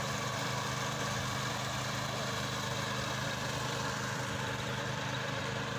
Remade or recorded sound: remade